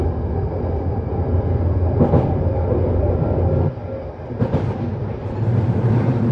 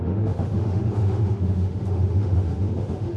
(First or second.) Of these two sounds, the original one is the first